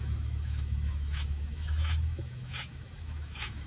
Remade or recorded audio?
remade